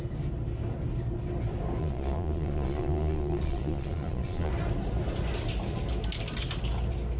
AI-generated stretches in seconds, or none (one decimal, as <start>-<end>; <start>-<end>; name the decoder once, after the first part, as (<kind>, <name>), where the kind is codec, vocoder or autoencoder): 1.8-4.5 (vocoder, Vocos)